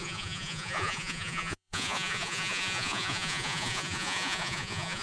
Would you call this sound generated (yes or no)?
yes